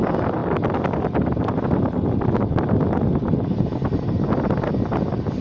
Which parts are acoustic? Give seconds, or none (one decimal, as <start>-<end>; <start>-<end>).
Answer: 0.0-5.4